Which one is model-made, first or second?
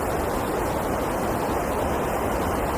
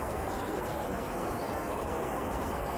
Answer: second